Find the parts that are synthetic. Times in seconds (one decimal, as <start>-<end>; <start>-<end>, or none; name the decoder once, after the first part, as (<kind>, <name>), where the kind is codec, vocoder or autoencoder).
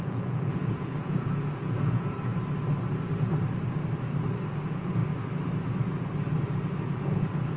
0.0-2.3 (vocoder, Vocos); 4.5-5.0; 6.9-7.6